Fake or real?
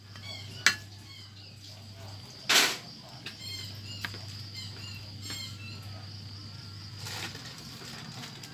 real